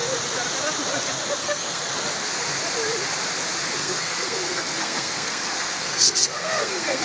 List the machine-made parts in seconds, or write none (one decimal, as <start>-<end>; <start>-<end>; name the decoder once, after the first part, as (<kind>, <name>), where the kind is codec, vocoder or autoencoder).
1.4-1.9 (codec, SNAC); 3.8-7.0